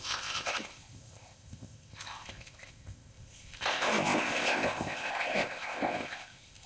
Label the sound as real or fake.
fake